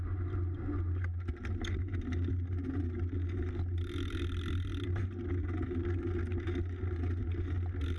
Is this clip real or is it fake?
real